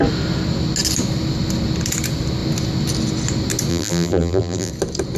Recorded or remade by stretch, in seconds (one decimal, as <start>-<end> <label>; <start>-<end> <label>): 0.0-3.7 recorded; 3.7-4.7 remade; 4.7-5.2 recorded